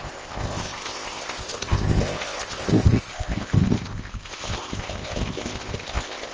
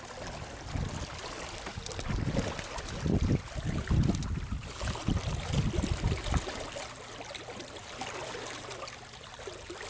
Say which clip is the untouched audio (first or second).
second